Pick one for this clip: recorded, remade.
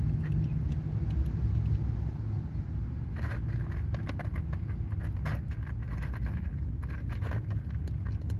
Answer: recorded